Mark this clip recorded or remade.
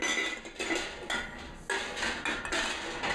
recorded